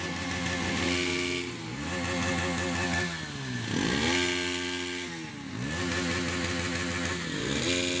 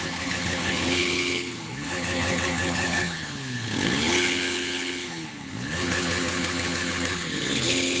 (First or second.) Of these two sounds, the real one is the first